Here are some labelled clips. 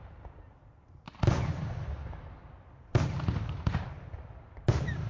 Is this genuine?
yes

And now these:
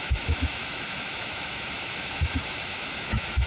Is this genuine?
no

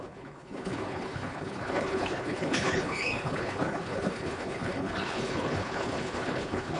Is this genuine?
no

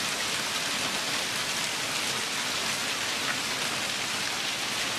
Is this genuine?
yes